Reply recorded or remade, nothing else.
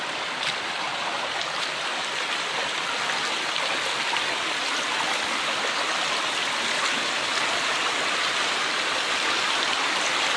recorded